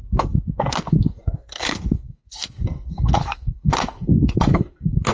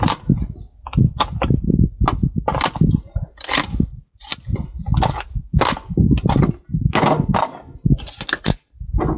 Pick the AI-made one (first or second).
first